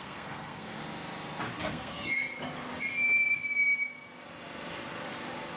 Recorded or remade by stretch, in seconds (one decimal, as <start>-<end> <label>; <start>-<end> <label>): 0.0-0.8 remade; 0.8-1.7 recorded; 1.7-2.1 remade; 2.1-5.6 recorded